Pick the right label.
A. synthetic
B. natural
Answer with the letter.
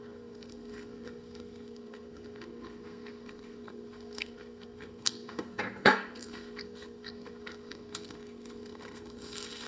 A